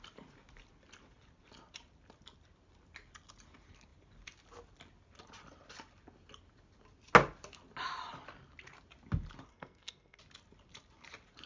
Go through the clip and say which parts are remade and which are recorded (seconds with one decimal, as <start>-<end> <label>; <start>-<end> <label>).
0.0-9.5 recorded; 9.5-10.2 remade; 10.2-11.5 recorded